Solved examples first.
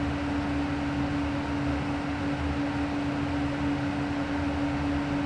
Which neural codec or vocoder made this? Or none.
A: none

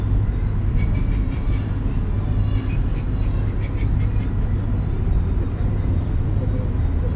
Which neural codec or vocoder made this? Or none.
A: none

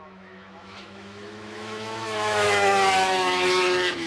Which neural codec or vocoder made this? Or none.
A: autoencoder, DAC-VAE